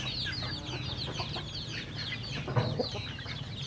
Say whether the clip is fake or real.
real